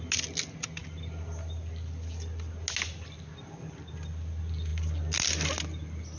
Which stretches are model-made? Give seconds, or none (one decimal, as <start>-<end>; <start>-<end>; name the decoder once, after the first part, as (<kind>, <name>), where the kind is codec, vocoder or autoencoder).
none